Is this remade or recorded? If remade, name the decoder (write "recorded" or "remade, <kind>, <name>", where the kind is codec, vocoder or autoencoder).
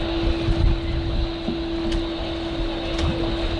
recorded